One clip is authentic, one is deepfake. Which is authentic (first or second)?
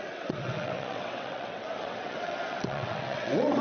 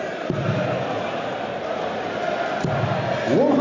second